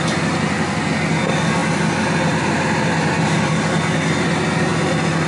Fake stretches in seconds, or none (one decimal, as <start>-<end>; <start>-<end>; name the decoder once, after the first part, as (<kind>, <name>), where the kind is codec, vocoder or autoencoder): none